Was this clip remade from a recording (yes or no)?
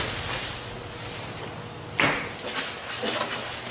no